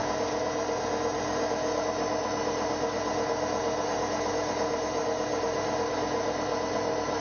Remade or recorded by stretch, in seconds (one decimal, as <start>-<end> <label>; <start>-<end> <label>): 0.0-7.2 recorded